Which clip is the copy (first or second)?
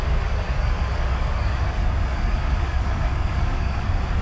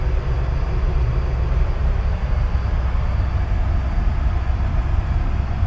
first